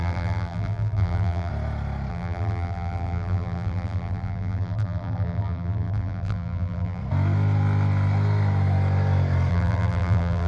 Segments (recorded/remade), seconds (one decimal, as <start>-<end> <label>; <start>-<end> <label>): 0.0-1.5 remade; 1.5-2.1 recorded; 2.1-7.0 remade; 7.0-9.5 recorded; 9.5-10.5 remade

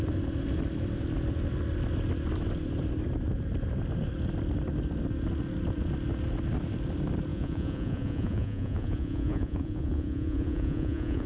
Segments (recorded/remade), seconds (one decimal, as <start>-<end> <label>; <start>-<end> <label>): 0.0-7.3 recorded; 7.3-11.3 remade

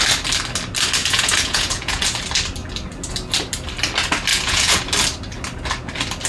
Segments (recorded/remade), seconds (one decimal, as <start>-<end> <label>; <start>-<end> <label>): 0.0-1.0 recorded; 1.0-2.0 remade; 2.0-4.3 recorded; 4.3-4.8 remade; 4.8-6.3 recorded

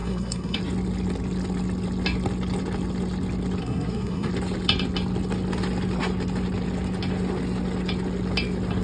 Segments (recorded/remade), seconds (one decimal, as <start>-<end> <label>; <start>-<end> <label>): 0.0-0.6 remade; 0.6-3.6 recorded; 3.6-4.3 remade; 4.3-8.8 recorded